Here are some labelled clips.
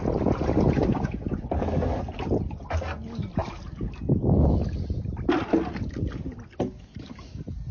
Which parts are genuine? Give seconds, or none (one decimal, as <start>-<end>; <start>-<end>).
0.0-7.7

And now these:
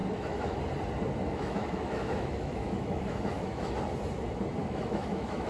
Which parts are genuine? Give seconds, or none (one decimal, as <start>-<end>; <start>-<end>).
0.6-1.2; 3.7-4.6

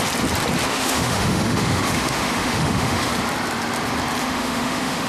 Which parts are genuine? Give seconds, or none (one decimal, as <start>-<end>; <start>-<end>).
0.0-0.7; 3.1-4.2